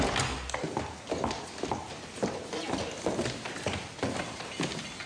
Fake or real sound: real